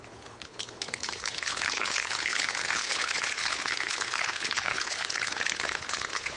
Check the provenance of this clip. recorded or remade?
remade